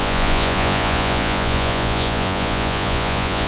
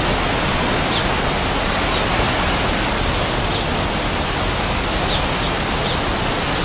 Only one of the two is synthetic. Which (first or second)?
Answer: first